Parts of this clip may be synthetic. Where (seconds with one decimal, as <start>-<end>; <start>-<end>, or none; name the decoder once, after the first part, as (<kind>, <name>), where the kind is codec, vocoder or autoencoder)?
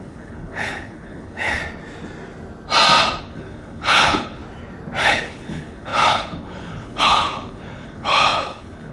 0.0-1.6 (codec, HILCodec); 3.2-4.4; 5.0-8.9